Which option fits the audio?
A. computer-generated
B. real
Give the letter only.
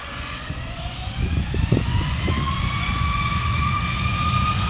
A